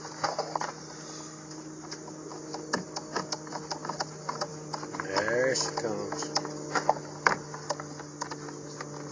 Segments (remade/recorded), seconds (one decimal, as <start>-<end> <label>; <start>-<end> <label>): 0.0-9.1 recorded